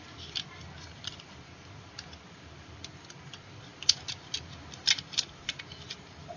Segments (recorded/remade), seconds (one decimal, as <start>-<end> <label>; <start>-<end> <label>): 0.0-6.4 recorded